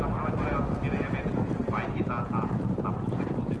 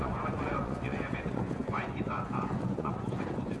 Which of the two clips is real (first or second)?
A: first